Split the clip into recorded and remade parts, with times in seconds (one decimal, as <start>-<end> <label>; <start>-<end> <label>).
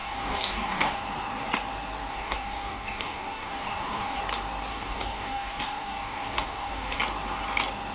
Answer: 0.0-1.0 remade; 1.0-2.1 recorded; 2.1-4.2 remade; 4.2-4.7 recorded; 4.7-7.0 remade; 7.0-7.9 recorded